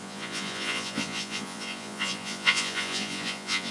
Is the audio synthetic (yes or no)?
yes